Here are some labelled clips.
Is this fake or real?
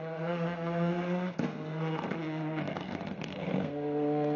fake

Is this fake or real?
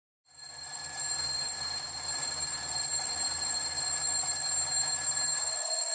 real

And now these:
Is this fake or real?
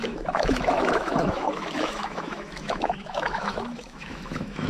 fake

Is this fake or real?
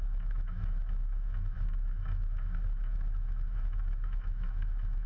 fake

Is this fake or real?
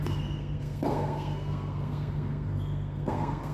fake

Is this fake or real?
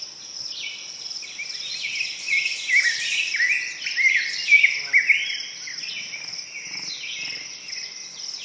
real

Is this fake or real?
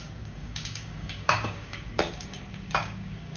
fake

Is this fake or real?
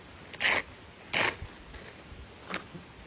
real